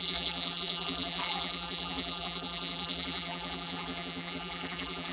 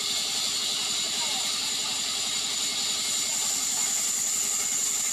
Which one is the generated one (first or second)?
first